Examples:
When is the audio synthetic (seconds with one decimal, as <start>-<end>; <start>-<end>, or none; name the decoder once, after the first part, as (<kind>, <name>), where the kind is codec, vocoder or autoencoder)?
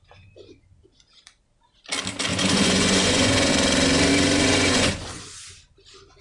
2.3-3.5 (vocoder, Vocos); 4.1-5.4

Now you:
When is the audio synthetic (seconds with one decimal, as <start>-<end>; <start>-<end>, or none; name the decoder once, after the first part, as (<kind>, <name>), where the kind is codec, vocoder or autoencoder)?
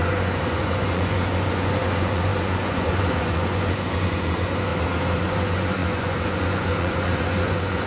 0.0-4.7 (vocoder, Vocos); 5.2-7.9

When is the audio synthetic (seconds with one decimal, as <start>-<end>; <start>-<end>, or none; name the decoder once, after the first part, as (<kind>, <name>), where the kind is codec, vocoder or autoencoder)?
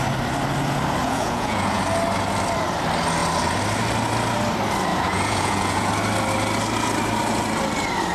1.0-1.8 (vocoder, Vocos); 4.9-5.9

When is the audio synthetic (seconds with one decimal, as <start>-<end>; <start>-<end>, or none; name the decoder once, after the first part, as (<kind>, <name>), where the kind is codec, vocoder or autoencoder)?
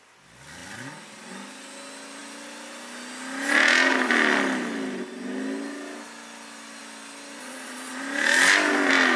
7.4-8.0 (vocoder, Vocos)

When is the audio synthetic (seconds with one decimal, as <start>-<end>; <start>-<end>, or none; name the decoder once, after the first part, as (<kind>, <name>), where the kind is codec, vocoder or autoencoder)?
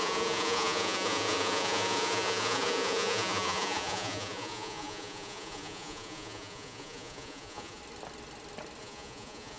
0.0-7.8 (vocoder, Vocos); 8.8-9.6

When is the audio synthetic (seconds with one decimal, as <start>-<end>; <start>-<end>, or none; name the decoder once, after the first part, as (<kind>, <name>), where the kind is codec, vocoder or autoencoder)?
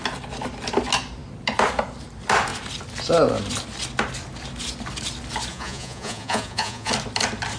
5.5-6.9 (vocoder, Vocos)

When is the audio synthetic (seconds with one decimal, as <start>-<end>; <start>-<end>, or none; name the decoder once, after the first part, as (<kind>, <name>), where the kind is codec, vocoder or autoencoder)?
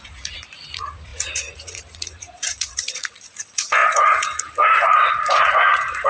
0.0-6.1 (vocoder, Vocos)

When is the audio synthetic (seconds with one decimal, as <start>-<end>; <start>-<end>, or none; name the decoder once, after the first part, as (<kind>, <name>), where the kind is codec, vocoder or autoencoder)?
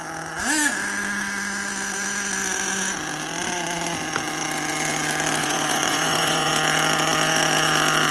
5.4-6.5 (vocoder, Vocos)